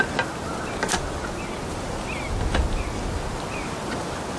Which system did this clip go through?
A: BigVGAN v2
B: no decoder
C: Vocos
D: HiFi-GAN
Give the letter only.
B